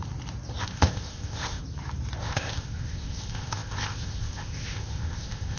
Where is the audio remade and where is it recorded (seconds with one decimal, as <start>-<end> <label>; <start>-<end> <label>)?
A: 0.0-0.6 recorded; 0.6-1.6 remade; 1.6-2.2 recorded; 2.2-5.6 remade